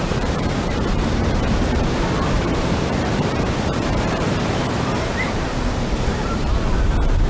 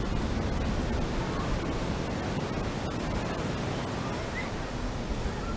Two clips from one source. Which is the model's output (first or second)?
first